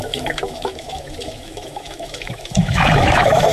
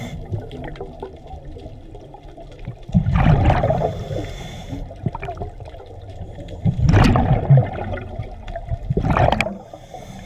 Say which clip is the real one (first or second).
second